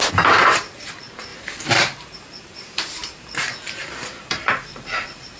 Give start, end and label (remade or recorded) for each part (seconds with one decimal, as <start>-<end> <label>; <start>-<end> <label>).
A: 0.0-5.4 remade